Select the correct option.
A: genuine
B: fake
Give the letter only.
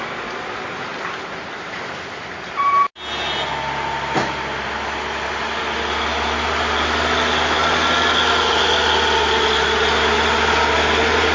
A